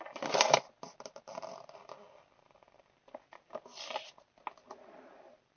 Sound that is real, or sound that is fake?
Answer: real